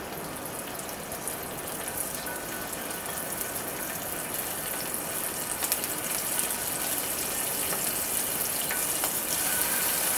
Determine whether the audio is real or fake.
real